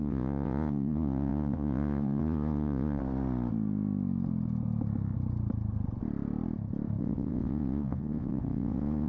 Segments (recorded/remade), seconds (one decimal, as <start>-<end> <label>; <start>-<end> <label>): 0.0-3.0 remade; 3.0-7.0 recorded; 7.0-9.1 remade